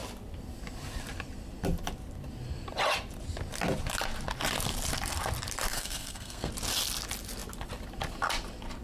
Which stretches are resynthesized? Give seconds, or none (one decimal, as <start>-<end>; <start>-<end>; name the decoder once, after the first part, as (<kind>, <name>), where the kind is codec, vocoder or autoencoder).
5.7-6.5 (codec, SNAC)